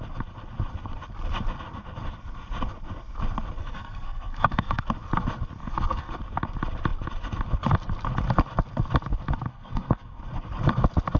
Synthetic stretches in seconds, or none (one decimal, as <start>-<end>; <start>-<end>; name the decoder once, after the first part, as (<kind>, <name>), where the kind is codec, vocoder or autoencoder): 3.6-4.8 (codec, SNAC); 5.6-6.1; 9.5-10.2